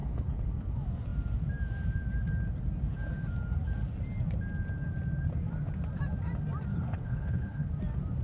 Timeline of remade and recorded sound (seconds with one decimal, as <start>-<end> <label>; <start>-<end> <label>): 0.0-0.5 remade; 0.5-6.7 recorded; 6.7-7.7 remade; 7.7-8.2 recorded